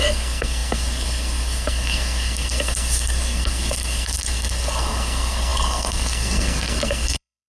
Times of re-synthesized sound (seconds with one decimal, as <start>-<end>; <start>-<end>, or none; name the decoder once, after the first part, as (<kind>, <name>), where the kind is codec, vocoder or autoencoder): 0.0-7.5 (codec, SNAC)